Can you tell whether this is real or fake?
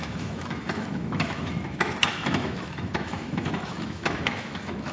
fake